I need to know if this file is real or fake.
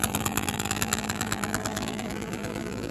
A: fake